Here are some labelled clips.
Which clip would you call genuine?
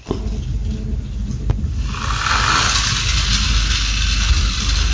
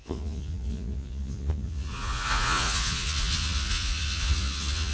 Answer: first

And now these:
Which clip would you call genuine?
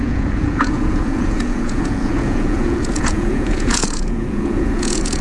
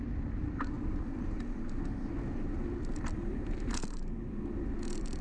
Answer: second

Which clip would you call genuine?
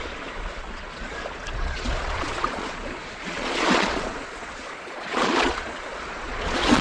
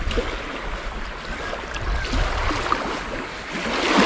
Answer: second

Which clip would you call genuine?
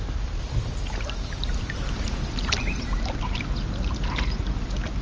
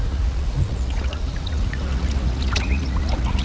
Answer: first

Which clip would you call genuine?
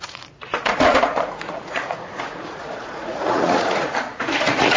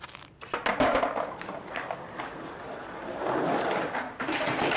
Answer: second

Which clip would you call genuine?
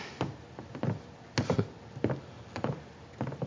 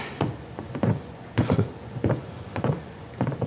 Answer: first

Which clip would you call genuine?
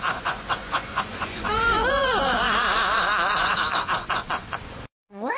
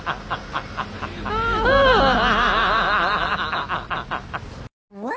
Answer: second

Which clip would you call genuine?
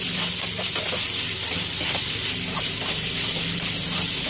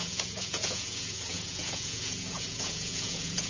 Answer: first